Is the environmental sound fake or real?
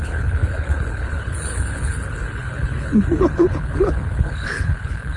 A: fake